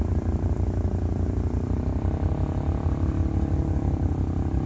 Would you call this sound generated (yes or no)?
no